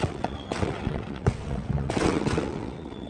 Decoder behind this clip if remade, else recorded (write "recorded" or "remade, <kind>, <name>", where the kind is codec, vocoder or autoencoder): remade, vocoder, WaveNeXt